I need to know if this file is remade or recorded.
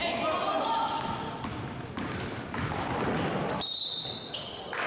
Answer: recorded